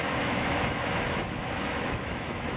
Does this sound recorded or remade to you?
remade